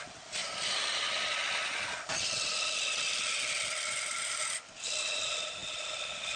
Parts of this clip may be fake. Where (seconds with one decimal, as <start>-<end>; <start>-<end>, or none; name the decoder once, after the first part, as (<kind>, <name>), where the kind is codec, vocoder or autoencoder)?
none